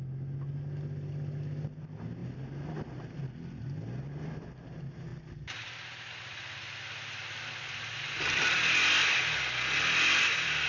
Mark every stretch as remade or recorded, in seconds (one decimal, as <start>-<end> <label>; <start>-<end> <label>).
0.0-10.7 recorded